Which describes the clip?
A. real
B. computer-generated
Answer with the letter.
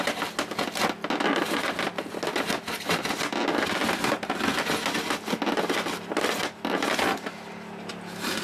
A